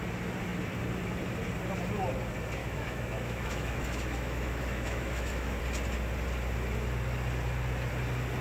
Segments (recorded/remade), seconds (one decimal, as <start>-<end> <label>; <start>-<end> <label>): 0.0-2.6 recorded; 2.6-5.6 remade; 5.6-8.4 recorded